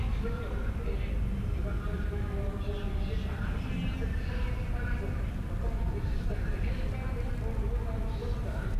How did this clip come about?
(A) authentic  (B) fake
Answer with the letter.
A